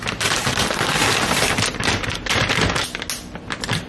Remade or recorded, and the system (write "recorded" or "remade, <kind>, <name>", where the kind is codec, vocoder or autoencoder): recorded